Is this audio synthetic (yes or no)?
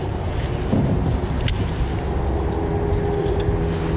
no